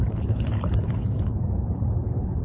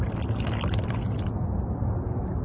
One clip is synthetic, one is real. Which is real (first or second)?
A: second